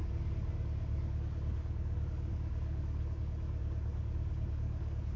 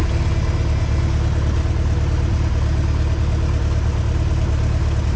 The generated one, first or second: first